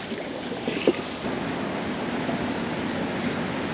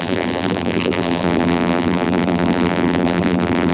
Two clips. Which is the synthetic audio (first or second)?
second